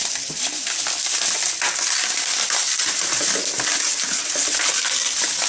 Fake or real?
real